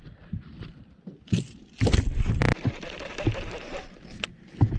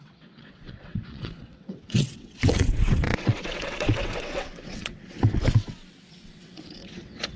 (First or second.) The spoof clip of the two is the second